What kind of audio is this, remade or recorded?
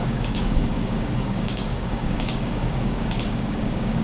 remade